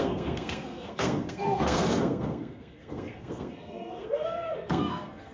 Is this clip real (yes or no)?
no